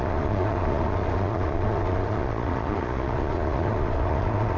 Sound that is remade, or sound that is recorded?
remade